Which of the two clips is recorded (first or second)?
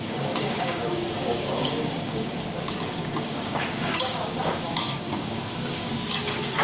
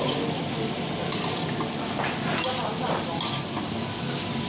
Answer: second